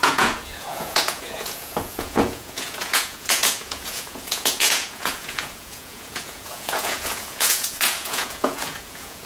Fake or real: fake